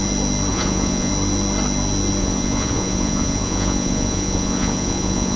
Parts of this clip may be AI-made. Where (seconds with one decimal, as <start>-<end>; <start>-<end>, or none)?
0.5-1.1; 2.2-5.4